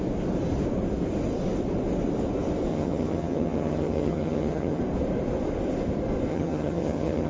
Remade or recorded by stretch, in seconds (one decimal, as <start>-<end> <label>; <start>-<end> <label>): 0.0-2.7 recorded; 2.7-4.8 remade; 4.8-6.3 recorded; 6.3-7.3 remade